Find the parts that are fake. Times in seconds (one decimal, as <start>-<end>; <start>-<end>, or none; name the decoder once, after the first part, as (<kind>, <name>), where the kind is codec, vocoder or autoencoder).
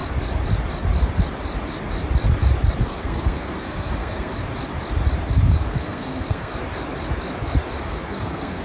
2.8-4.3 (codec, SNAC); 5.4-6.5; 7.8-8.6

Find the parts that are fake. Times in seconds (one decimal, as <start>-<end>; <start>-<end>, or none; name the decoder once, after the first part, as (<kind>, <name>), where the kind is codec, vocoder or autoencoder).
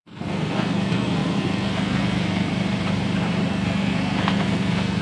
0.0-2.5 (codec, SNAC); 3.5-5.0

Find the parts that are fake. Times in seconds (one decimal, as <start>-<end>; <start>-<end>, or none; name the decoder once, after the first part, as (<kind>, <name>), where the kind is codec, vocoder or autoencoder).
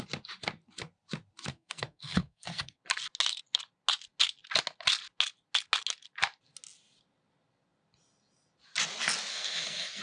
1.5-2.8 (codec, SNAC); 9.3-10.0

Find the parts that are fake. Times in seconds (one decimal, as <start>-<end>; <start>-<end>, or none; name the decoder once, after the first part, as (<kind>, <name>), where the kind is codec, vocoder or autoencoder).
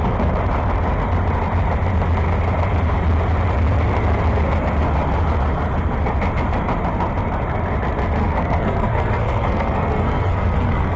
8.2-11.0 (codec, SNAC)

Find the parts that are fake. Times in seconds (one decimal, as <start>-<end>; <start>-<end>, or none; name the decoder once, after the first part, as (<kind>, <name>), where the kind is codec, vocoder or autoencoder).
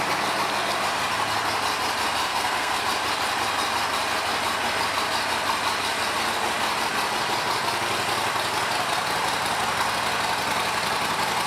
2.3-2.8 (codec, SNAC)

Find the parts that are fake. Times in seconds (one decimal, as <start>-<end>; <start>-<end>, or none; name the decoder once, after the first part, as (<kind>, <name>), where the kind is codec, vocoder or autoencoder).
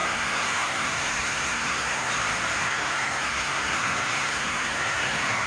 0.0-2.1 (codec, SNAC); 2.6-5.5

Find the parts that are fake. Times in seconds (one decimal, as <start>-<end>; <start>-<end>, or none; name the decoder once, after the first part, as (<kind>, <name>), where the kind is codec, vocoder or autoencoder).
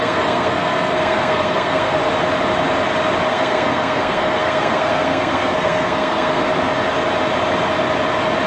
0.0-2.0 (codec, SNAC); 3.3-6.4